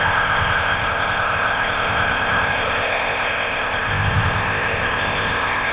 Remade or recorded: remade